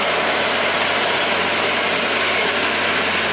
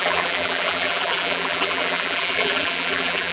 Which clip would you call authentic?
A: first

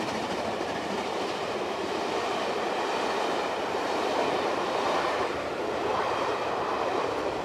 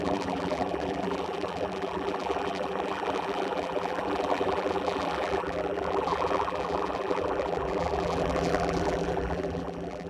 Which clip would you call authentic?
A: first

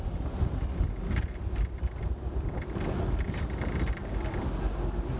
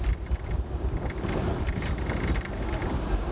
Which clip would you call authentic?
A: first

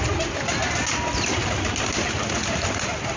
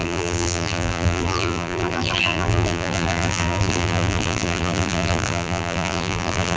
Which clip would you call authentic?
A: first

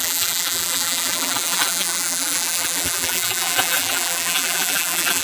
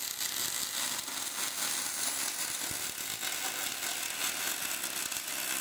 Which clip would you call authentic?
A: second